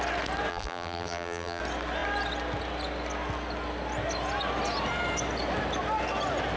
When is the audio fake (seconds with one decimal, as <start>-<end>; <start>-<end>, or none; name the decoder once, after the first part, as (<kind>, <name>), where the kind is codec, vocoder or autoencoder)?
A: 0.5-1.6 (vocoder, BigVGAN v2)